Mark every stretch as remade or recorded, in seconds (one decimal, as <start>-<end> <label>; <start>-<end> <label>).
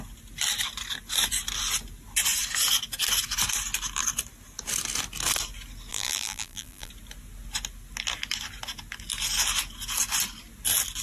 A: 0.0-5.9 recorded; 5.9-6.9 remade; 6.9-11.0 recorded